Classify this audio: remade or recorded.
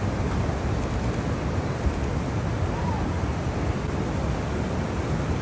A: recorded